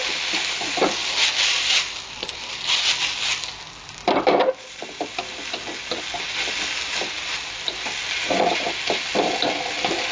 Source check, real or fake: real